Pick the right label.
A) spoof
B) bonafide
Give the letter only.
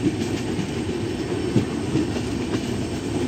B